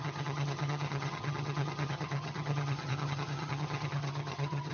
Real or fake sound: fake